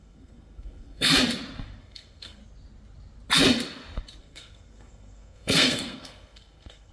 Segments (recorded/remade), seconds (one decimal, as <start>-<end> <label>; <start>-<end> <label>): 0.0-1.1 remade; 1.1-1.8 recorded; 1.8-2.4 remade; 2.4-4.2 recorded; 4.2-6.9 remade